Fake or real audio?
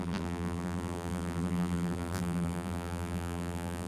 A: fake